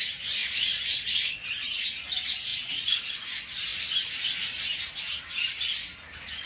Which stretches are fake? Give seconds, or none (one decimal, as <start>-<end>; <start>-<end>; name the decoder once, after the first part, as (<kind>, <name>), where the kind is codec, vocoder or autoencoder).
0.4-1.8 (vocoder, Vocos); 2.5-3.0